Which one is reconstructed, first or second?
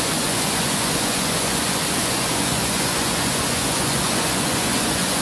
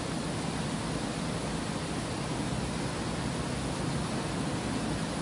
first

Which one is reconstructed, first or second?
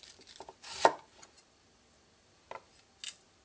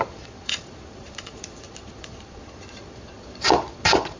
second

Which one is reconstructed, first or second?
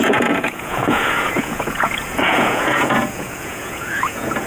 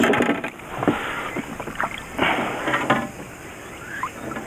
first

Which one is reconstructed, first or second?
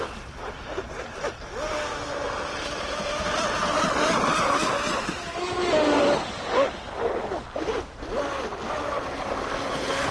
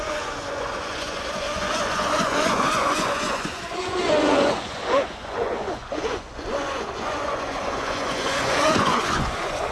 second